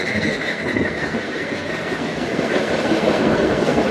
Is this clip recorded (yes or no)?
no